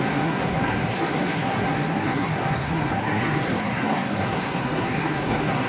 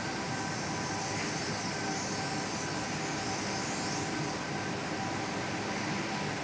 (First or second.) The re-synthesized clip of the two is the first